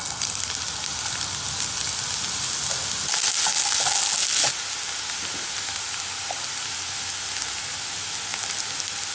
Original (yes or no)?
yes